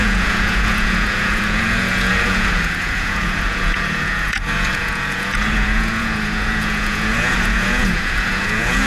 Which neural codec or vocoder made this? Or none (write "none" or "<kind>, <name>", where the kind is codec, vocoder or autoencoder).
vocoder, Vocos